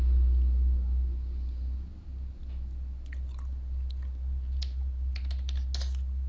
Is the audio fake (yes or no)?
no